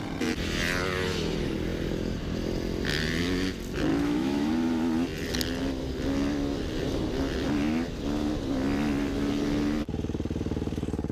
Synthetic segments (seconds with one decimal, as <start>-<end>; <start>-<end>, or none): 3.9-4.5